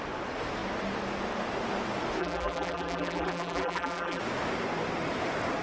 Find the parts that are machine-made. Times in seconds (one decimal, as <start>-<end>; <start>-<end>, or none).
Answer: 2.2-4.2